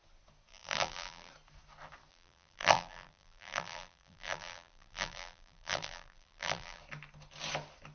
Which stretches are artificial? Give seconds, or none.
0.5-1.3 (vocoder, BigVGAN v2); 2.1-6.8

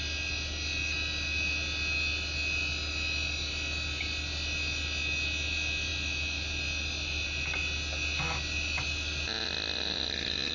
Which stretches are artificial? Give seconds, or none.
none

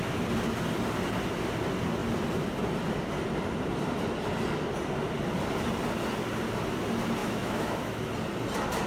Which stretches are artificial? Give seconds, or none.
7.2-8.1 (autoencoder, DAC-VAE)

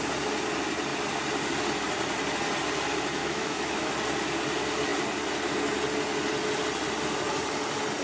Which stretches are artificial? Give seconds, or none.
3.2-3.9 (autoencoder, DAC-VAE)

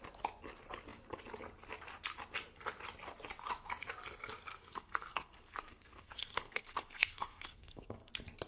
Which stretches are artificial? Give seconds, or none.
4.5-8.1 (codec, SNAC)

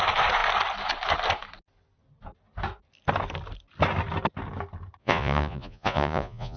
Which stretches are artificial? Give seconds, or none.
5.0-6.6 (vocoder, Vocos)

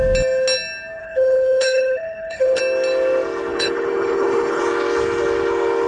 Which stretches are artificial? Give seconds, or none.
1.0-2.6 (codec, HILCodec); 3.5-4.6